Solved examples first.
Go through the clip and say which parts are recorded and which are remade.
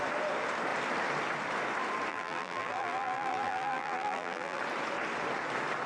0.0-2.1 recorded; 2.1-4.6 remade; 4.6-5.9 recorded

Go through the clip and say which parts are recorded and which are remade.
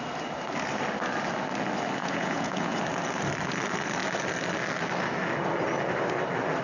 0.0-2.0 recorded; 2.0-2.8 remade; 2.8-6.6 recorded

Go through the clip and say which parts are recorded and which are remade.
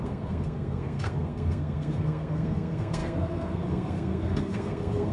0.0-5.1 remade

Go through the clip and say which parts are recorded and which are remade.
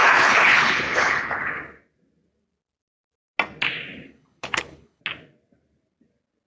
0.0-1.6 remade; 1.6-3.9 recorded; 3.9-5.0 remade; 5.0-6.5 recorded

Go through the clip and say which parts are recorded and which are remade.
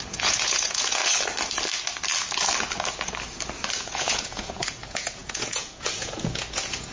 0.0-1.0 remade; 1.0-3.7 recorded; 3.7-6.9 remade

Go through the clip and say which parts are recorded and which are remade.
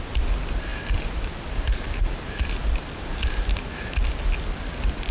0.0-5.1 recorded